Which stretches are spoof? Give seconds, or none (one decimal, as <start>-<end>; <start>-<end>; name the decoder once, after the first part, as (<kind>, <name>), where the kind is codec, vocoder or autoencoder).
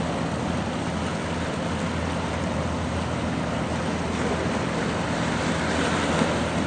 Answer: none